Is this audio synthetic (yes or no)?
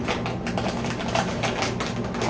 no